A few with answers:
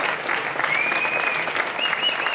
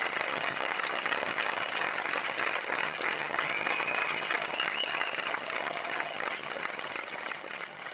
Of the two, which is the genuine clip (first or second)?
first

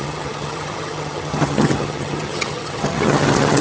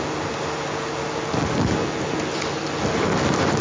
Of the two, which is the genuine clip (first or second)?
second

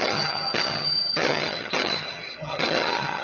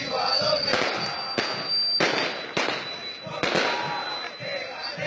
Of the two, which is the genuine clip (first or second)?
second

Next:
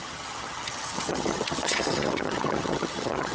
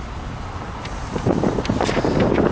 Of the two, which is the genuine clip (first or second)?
second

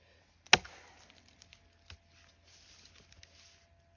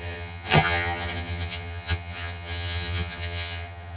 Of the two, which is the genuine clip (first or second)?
first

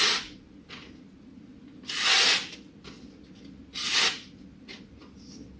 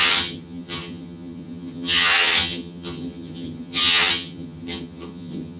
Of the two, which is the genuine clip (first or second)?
first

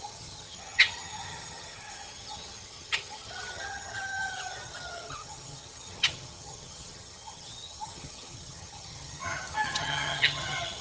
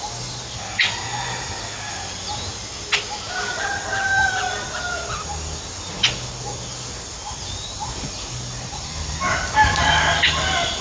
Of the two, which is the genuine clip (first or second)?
second